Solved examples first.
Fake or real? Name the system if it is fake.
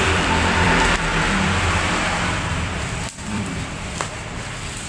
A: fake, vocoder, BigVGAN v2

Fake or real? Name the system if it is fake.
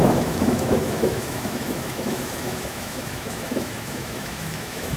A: fake, autoencoder, DAC-VAE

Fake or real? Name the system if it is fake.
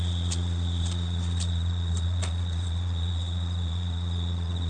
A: fake, vocoder, Vocos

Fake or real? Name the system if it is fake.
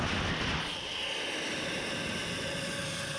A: real